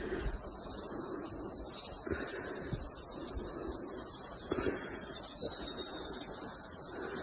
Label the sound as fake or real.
fake